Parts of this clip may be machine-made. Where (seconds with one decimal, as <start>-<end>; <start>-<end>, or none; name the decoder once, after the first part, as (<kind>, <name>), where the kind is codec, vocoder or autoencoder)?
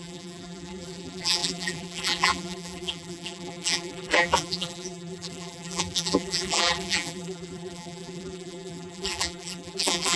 0.0-10.2 (vocoder, BigVGAN v2)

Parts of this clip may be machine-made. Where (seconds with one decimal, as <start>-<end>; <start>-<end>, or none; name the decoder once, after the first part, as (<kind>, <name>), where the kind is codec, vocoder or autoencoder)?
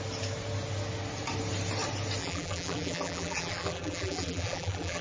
2.2-5.0 (vocoder, BigVGAN v2)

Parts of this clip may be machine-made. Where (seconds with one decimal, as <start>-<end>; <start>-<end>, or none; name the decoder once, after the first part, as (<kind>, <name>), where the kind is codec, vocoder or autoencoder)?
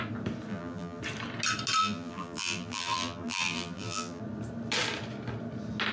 0.5-1.0 (vocoder, BigVGAN v2); 1.8-4.2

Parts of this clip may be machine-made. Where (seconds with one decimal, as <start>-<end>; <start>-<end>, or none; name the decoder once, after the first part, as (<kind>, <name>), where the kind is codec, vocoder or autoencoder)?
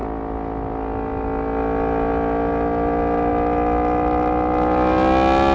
none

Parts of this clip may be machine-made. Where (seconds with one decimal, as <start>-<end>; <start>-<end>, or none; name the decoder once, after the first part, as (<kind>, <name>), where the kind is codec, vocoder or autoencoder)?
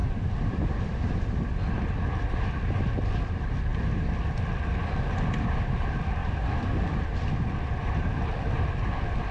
0.0-3.7 (vocoder, BigVGAN v2); 5.1-9.3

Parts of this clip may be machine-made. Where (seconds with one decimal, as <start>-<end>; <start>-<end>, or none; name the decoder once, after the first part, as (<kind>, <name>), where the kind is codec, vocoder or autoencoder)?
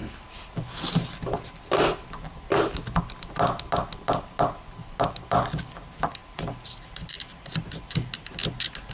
6.2-7.5 (vocoder, BigVGAN v2)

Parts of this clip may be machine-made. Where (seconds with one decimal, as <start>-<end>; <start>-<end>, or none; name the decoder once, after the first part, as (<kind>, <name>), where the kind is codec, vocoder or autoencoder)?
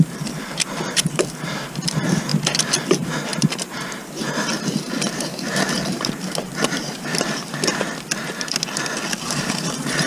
0.0-2.3 (vocoder, BigVGAN v2); 2.9-7.1; 9.2-10.1